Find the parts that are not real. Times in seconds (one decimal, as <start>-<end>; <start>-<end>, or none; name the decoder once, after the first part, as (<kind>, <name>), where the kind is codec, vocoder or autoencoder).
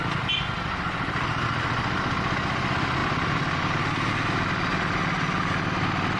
none